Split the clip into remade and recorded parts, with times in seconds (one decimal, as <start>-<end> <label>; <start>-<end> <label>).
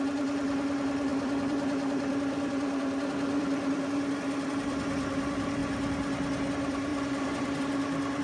0.0-5.6 remade; 5.6-6.5 recorded; 6.5-8.2 remade